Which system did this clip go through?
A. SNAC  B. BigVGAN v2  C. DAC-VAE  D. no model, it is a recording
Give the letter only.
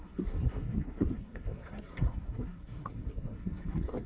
A